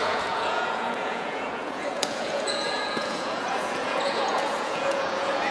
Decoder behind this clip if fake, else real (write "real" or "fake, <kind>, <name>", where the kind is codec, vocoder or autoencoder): fake, vocoder, Vocos